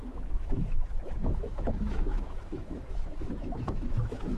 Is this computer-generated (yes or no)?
yes